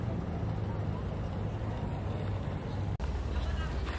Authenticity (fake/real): real